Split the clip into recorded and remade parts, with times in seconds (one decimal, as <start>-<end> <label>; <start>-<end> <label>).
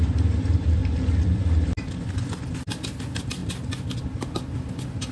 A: 0.0-5.1 recorded